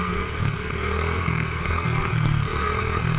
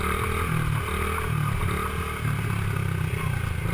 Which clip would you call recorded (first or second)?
second